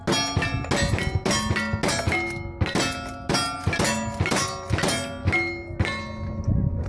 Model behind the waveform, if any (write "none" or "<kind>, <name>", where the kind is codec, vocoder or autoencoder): none